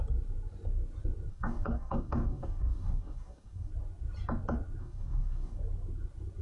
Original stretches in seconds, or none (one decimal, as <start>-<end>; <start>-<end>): 0.0-1.3; 3.7-4.8; 5.6-6.4